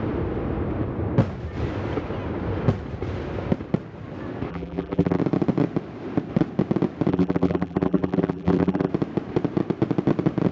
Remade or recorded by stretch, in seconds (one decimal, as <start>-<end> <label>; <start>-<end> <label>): 0.0-4.5 recorded; 4.5-5.2 remade; 5.2-7.1 recorded; 7.1-8.9 remade; 8.9-10.5 recorded